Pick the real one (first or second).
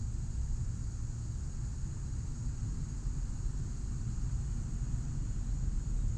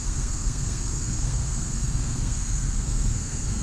first